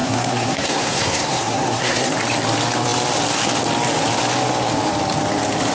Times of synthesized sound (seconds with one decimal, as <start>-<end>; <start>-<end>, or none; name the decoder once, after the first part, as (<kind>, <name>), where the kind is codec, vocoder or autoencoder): 0.0-2.1 (codec, SNAC)